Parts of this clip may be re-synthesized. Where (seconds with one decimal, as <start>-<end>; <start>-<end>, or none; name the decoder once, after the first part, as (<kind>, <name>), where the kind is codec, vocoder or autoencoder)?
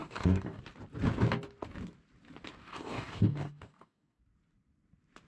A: 0.0-0.6 (codec, DAC); 2.6-4.2